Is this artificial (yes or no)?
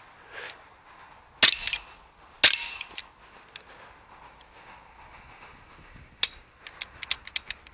no